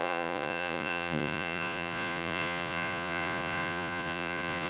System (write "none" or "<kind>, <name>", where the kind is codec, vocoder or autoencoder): vocoder, Vocos